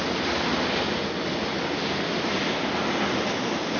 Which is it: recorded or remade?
recorded